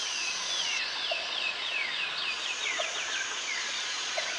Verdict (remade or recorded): remade